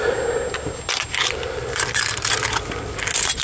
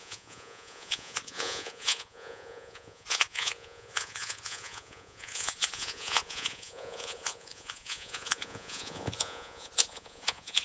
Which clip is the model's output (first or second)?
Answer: second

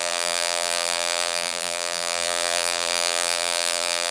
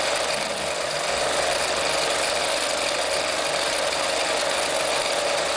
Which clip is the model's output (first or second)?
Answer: first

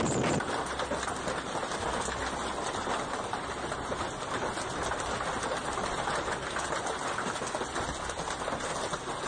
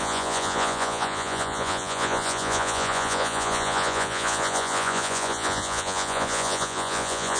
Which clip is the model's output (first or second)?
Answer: second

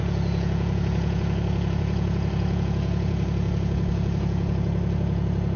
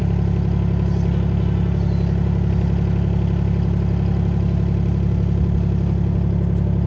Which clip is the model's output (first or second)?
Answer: first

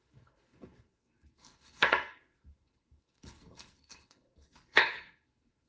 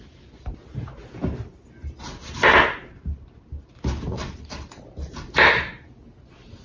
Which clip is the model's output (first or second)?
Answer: first